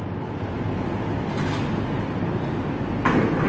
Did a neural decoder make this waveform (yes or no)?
no